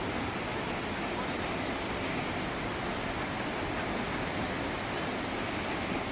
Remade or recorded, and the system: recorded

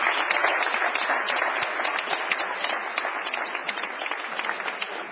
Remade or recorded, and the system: recorded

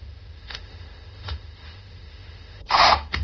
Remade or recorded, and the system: remade, autoencoder, DAC-VAE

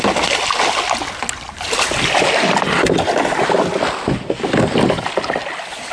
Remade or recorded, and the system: recorded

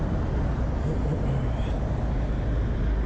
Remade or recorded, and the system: recorded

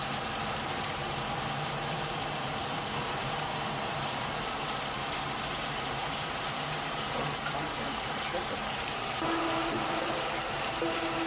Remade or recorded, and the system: remade, vocoder, BigVGAN v2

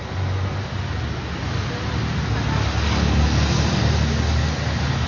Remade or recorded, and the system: recorded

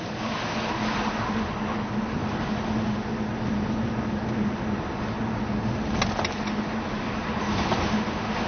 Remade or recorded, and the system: recorded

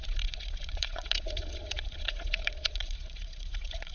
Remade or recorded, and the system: remade, vocoder, Vocos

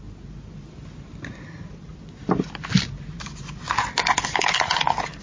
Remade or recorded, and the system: recorded